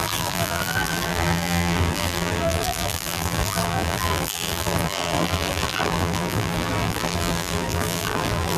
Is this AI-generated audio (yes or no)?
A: yes